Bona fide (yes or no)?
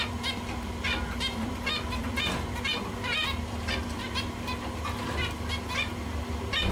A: yes